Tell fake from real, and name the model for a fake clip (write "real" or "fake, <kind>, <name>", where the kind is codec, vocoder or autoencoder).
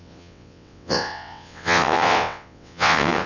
fake, vocoder, WaveNeXt